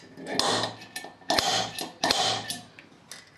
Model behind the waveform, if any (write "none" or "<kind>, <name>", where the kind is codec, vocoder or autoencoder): none